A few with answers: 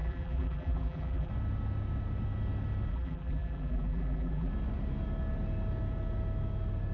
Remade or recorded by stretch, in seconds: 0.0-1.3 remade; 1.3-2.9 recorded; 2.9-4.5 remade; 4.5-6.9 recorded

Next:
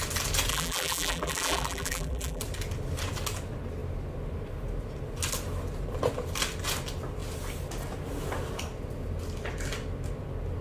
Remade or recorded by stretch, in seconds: 0.0-0.5 recorded; 0.5-2.4 remade; 2.4-10.6 recorded

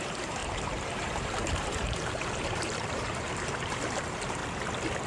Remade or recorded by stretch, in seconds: 0.0-4.4 remade; 4.4-5.1 recorded

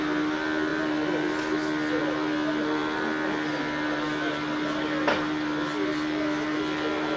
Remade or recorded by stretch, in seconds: 0.0-0.7 recorded; 0.7-2.0 remade; 2.0-2.8 recorded; 2.8-6.6 remade; 6.6-7.2 recorded

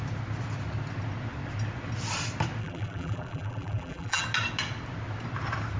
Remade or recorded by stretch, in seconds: 0.0-2.6 recorded; 2.6-4.2 remade; 4.2-5.8 recorded

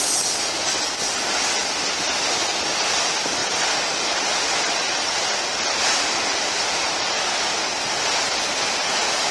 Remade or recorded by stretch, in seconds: 0.0-9.3 recorded

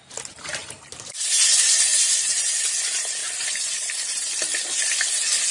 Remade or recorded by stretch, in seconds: 0.0-0.5 recorded; 0.5-1.3 remade; 1.3-1.9 recorded; 1.9-2.7 remade; 2.7-3.2 recorded; 3.2-4.3 remade; 4.3-5.5 recorded